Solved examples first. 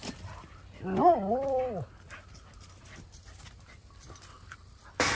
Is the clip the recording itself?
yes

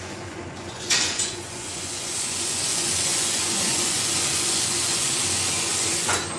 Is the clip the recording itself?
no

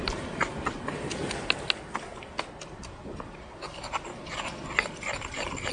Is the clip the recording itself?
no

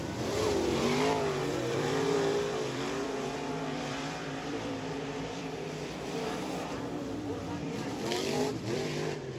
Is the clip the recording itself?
no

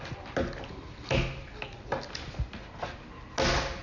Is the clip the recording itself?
yes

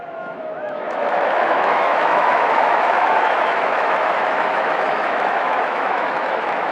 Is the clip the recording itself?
no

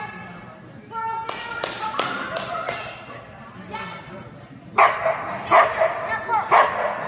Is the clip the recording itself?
yes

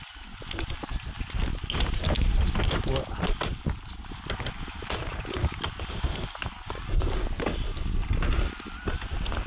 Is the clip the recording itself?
yes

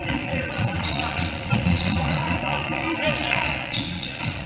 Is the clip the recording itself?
no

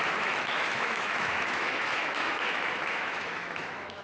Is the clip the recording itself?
no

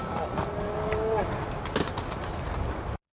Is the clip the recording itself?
yes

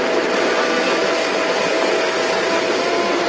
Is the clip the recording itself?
yes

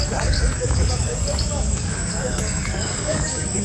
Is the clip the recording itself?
no